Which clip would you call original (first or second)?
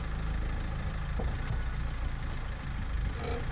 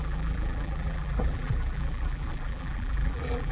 first